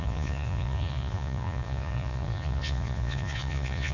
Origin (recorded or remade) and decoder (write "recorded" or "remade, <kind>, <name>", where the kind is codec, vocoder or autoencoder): remade, vocoder, Vocos